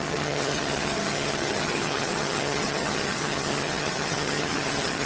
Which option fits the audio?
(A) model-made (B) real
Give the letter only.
A